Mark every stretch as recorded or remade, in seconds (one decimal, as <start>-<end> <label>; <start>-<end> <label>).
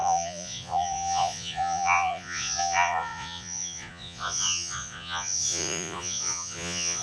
0.0-7.0 remade